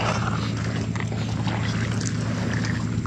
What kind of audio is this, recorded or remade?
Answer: recorded